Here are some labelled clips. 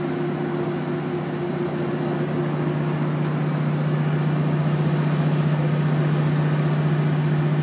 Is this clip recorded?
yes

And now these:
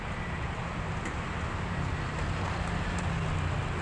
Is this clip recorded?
yes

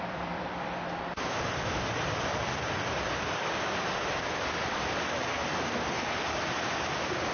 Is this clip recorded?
no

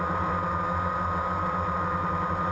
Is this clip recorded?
yes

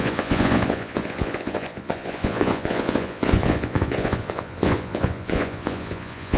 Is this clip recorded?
no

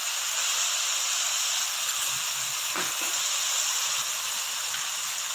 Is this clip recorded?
yes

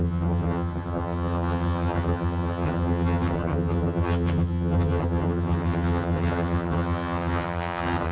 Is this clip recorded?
no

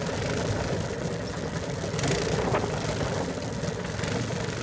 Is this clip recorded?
yes